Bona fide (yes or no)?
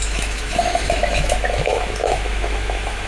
no